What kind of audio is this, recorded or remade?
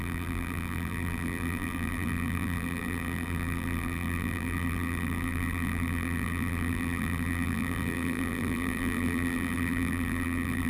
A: remade